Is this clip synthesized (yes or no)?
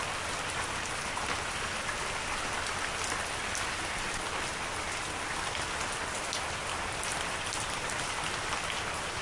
no